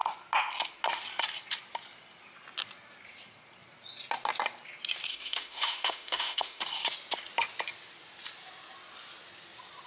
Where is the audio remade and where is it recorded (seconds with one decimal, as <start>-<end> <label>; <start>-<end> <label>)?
0.0-5.1 recorded; 5.1-6.6 remade; 6.6-9.9 recorded